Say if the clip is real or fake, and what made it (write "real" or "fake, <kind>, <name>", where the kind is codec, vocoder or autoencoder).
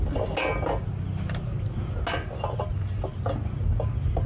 real